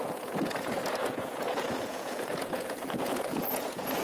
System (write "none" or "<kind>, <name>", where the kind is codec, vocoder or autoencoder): vocoder, Vocos